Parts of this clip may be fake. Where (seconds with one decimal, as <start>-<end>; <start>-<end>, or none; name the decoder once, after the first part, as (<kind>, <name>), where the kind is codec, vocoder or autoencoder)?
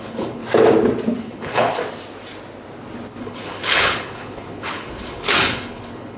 0.0-0.4 (codec, HILCodec); 1.2-1.8; 3.2-6.2